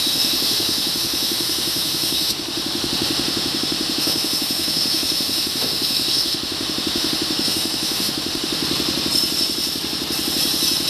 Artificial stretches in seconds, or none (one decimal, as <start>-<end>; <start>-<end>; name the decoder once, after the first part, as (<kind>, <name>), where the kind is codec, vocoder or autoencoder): 0.0-8.6 (autoencoder, DAC-VAE)